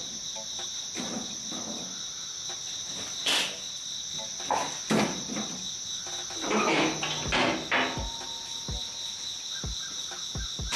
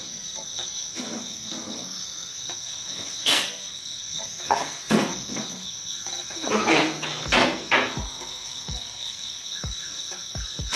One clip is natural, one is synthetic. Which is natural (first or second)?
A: first